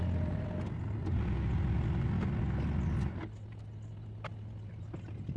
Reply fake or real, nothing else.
real